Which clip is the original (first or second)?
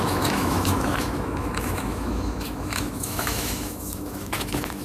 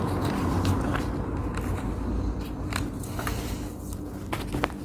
second